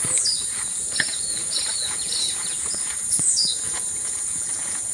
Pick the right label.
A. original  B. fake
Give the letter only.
B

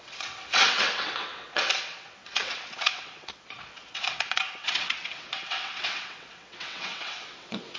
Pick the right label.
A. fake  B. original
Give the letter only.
A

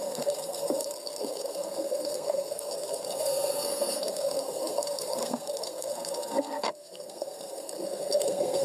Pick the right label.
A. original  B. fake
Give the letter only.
B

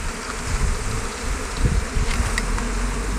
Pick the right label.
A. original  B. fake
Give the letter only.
A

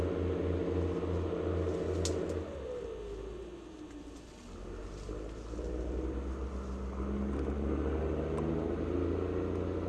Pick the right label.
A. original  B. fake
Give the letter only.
A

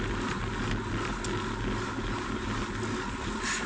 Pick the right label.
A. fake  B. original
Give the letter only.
B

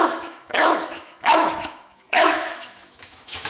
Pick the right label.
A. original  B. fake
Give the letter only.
B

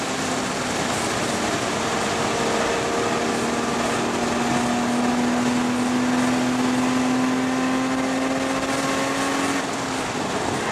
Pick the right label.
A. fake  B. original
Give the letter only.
B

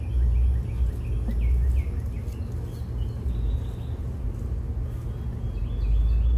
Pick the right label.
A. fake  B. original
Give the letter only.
B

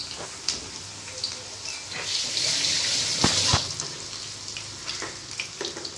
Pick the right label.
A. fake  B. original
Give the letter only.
B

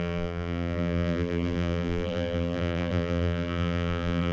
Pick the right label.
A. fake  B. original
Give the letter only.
A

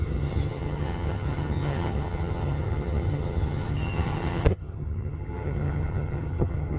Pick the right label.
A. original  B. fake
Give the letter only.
B